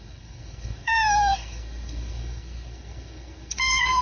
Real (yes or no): no